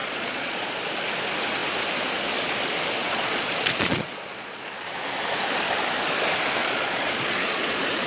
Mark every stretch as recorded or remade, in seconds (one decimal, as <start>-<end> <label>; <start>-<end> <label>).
0.0-0.8 remade; 0.8-3.0 recorded; 3.0-4.6 remade; 4.6-6.6 recorded; 6.6-8.1 remade